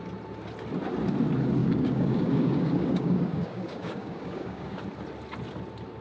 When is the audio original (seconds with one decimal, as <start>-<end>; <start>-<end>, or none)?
0.0-1.6; 4.8-6.0